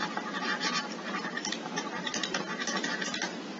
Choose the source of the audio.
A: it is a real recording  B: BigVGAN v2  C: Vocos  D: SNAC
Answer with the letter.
A